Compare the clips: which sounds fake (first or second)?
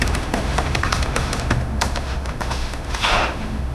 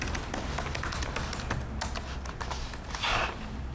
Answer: first